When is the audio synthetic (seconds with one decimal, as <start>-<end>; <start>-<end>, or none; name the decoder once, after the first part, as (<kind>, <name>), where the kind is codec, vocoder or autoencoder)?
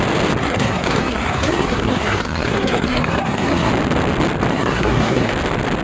0.4-3.7 (codec, SNAC); 4.5-5.3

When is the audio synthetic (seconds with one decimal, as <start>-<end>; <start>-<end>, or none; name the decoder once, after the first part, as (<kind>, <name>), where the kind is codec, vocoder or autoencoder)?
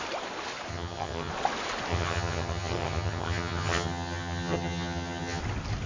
0.7-1.3 (vocoder, HiFi-GAN); 1.9-5.4